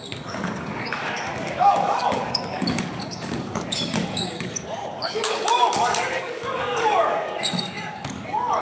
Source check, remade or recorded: remade